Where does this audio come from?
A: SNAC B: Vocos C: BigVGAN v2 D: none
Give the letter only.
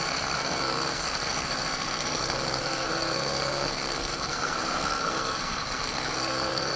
A